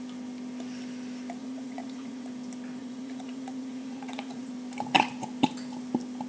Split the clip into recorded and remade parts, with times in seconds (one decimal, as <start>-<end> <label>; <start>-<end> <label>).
0.0-1.4 recorded; 1.4-2.3 remade; 2.3-2.8 recorded; 2.8-4.5 remade; 4.5-6.3 recorded